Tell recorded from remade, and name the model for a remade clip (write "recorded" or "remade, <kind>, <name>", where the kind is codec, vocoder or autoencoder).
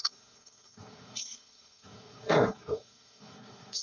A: remade, codec, SNAC